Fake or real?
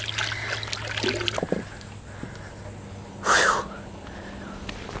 real